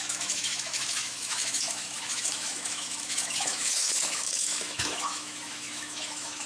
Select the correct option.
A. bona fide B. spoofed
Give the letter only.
B